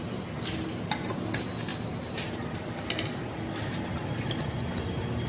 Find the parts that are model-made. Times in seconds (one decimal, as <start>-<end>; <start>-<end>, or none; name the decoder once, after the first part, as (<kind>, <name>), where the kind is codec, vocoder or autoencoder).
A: none